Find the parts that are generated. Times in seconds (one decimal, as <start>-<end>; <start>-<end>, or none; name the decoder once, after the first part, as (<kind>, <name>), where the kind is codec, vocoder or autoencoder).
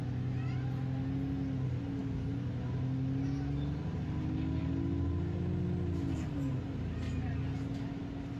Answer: none